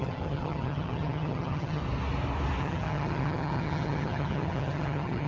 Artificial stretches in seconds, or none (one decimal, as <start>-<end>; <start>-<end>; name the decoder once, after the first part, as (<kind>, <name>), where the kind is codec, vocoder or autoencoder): 0.0-1.8 (vocoder, HiFi-GAN); 2.6-5.3

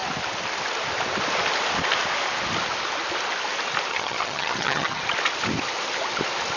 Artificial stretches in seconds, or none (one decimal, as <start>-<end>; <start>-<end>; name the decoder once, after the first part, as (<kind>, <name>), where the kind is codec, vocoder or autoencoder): 3.9-5.0 (vocoder, HiFi-GAN)

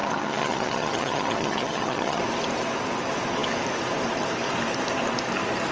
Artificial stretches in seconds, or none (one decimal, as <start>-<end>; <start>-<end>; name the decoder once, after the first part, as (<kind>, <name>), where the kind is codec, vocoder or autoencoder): 0.0-2.2 (vocoder, HiFi-GAN)